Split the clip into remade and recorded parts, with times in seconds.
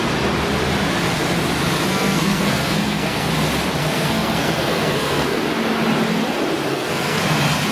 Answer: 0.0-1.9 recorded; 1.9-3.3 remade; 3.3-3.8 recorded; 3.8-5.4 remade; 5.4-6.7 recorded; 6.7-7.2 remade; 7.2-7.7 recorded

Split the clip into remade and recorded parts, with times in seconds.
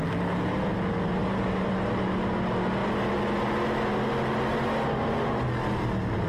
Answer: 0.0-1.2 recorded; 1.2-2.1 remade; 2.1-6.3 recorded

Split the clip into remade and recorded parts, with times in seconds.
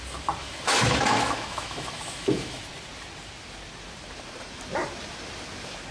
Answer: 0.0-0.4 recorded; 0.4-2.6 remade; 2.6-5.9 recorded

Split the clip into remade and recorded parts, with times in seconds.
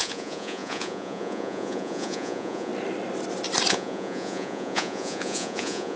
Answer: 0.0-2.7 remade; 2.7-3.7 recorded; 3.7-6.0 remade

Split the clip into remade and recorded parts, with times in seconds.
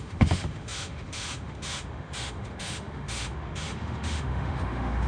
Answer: 0.0-5.1 remade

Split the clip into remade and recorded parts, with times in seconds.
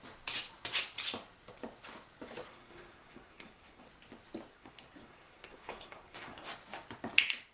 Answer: 0.0-2.5 recorded; 2.5-3.9 remade; 3.9-4.5 recorded; 4.5-6.5 remade; 6.5-7.5 recorded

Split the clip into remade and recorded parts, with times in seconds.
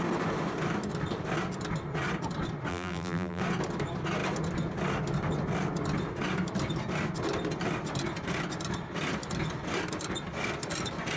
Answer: 0.0-2.7 recorded; 2.7-3.4 remade; 3.4-11.2 recorded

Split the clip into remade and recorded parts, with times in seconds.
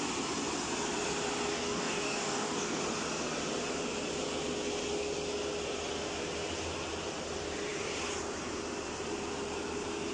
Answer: 0.0-1.5 recorded; 1.5-2.8 remade; 2.8-10.1 recorded